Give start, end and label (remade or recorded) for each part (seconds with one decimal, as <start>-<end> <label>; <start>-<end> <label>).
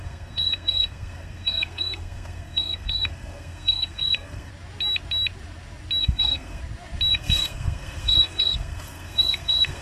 0.0-4.5 remade; 4.5-6.0 recorded; 6.0-6.6 remade; 6.6-7.1 recorded; 7.1-9.8 remade